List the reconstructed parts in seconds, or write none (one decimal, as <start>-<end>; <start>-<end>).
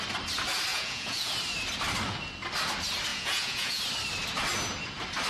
0.7-1.3; 3.1-3.8